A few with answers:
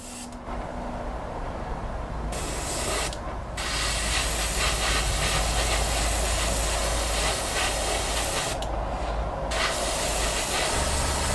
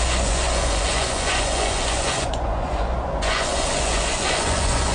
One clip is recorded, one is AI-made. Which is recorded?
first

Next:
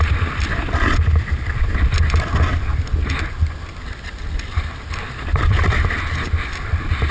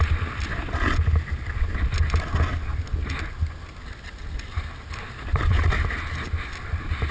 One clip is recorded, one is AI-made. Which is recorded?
second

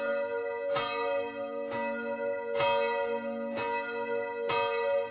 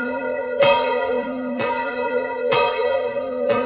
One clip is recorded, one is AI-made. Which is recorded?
first